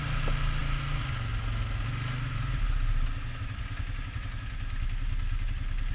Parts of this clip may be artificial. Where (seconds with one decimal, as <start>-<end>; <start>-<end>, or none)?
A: none